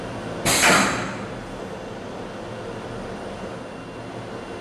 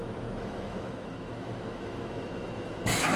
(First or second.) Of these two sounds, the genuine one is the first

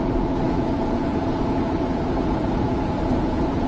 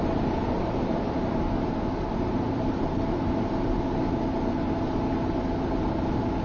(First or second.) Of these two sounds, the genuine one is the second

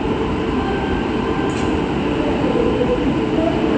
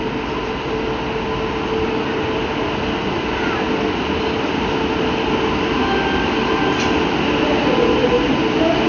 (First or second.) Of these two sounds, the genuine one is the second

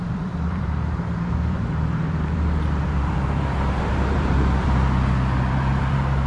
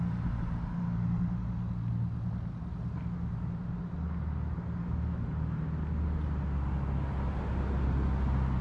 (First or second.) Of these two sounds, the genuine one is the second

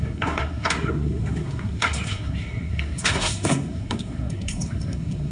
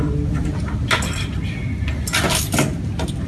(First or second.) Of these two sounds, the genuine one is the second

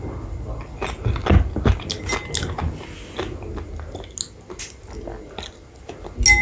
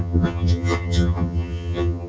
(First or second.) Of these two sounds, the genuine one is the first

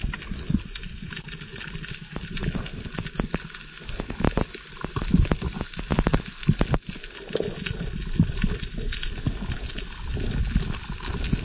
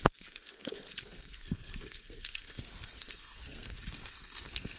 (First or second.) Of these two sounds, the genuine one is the first